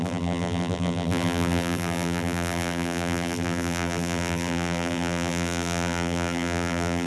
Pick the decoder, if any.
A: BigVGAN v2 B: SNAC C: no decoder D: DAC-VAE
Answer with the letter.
A